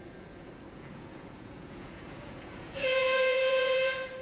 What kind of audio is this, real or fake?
fake